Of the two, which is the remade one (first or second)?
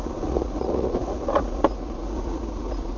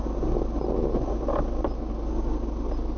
first